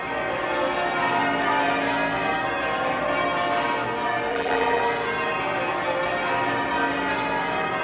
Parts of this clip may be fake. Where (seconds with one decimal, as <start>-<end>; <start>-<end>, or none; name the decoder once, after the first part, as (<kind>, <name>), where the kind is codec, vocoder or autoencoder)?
4.3-4.8 (vocoder, BigVGAN v2)